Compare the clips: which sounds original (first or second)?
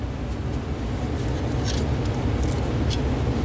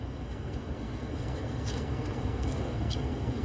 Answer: first